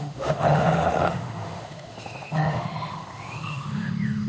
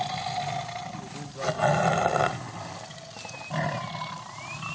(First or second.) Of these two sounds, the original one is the second